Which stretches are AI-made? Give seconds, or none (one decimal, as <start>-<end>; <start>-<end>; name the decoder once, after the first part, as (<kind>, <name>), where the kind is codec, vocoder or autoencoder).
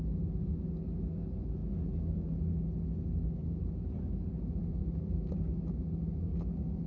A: none